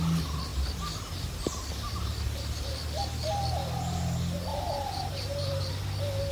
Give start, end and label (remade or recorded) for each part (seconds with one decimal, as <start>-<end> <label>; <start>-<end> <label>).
0.0-4.5 recorded; 4.5-5.7 remade; 5.7-6.3 recorded